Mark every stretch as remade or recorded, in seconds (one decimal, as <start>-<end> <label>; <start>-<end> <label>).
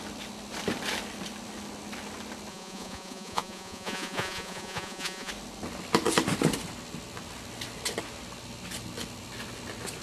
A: 0.0-2.5 recorded; 2.5-5.3 remade; 5.3-10.0 recorded